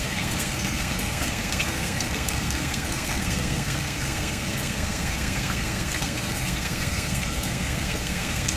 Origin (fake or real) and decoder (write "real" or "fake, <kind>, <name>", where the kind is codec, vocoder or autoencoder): fake, codec, SNAC